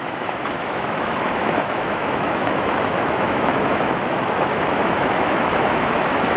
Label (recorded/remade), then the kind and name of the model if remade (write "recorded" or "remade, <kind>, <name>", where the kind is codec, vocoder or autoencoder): remade, autoencoder, DAC-VAE